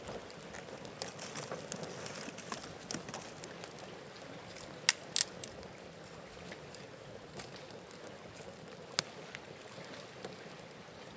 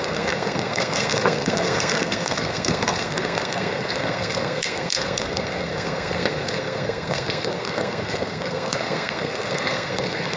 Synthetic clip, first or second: second